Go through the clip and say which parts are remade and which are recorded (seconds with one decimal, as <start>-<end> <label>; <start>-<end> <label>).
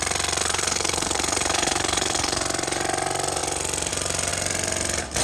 0.0-0.4 recorded; 0.4-2.4 remade; 2.4-5.2 recorded